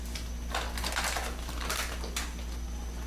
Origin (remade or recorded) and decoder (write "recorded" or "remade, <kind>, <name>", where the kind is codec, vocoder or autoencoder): recorded